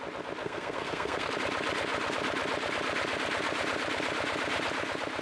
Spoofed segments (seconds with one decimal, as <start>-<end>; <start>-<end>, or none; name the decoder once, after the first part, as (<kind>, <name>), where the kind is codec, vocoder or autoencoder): 0.4-1.3 (codec, SNAC)